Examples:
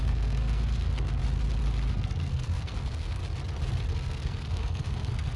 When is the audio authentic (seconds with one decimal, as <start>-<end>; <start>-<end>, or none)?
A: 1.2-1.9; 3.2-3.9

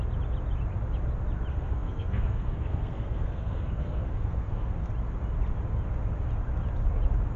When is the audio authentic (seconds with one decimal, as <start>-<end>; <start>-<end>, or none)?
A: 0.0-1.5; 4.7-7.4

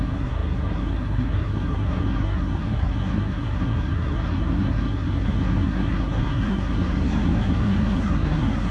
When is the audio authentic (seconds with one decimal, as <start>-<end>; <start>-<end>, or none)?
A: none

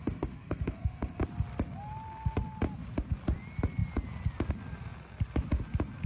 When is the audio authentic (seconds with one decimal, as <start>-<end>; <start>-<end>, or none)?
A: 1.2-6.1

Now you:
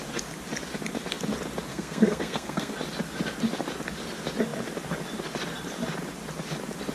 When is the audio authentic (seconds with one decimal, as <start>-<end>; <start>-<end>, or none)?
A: 0.0-1.7; 2.7-6.9